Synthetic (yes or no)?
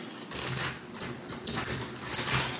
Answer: no